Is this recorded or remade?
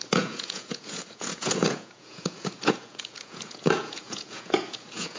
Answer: remade